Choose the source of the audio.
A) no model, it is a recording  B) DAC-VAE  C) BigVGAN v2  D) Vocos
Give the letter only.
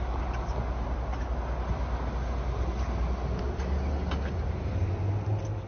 A